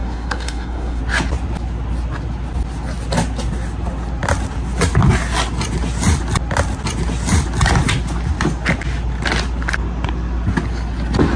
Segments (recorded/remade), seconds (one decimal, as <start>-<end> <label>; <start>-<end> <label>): 0.0-1.0 remade; 1.0-11.4 recorded